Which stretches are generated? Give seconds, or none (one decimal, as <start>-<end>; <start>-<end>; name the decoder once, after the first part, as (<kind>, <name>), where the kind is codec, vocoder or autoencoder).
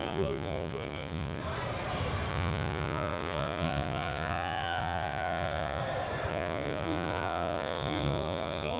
0.0-1.4 (vocoder, Vocos); 2.3-5.8; 6.3-8.8